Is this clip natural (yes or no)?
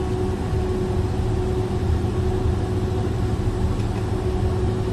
yes